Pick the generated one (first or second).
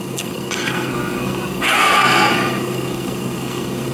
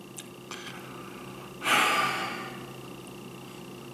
first